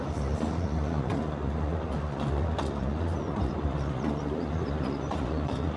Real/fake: fake